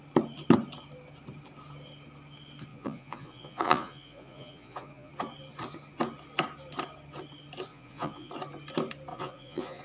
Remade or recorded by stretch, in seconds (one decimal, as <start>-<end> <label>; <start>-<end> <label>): 0.0-2.7 recorded; 2.7-5.1 remade; 5.1-7.7 recorded; 7.7-8.3 remade; 8.3-9.1 recorded; 9.1-9.8 remade